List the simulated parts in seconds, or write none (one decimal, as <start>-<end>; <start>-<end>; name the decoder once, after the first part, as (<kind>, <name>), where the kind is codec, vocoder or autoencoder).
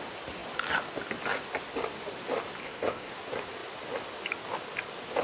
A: 2.6-3.1 (codec, ZipCodec)